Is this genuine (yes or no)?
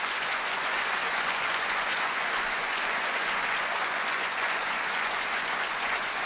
no